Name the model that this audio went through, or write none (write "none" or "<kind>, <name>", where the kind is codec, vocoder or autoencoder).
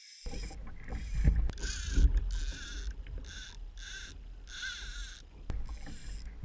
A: none